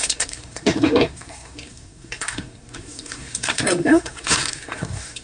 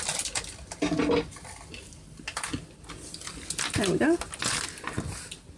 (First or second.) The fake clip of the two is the first